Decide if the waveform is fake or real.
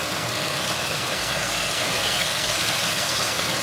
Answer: fake